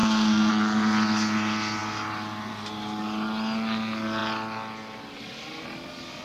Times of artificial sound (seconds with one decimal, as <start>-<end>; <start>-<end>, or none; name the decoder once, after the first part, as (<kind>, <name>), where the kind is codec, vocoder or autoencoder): 0.0-0.5 (codec, SNAC)